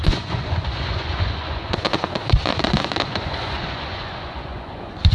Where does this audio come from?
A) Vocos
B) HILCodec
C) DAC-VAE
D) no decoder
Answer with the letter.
A